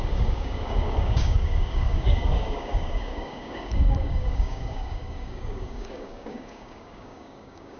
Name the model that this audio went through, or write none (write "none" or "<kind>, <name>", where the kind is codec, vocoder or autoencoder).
codec, DAC